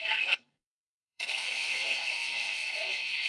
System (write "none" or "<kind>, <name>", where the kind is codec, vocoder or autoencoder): codec, SNAC